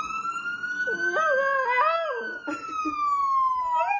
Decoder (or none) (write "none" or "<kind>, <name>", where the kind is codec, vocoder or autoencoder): none